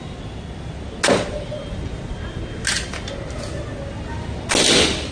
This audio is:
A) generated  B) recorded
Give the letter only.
B